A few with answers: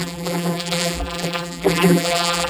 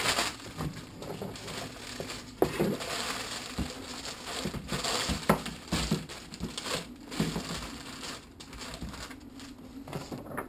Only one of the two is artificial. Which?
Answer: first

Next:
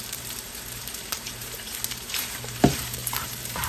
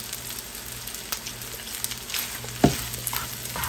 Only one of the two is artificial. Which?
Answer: first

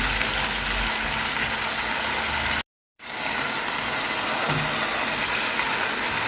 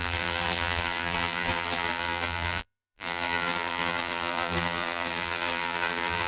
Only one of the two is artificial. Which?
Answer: second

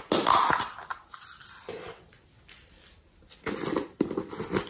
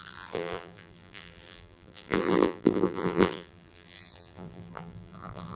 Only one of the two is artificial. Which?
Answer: second